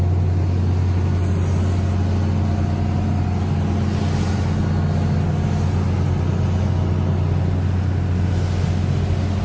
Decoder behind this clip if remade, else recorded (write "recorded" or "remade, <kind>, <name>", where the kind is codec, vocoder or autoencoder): recorded